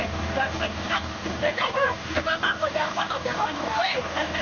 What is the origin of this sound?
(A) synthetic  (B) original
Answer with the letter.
A